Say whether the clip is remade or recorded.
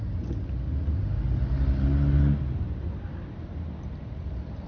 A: recorded